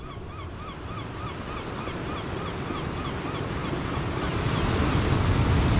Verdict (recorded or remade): recorded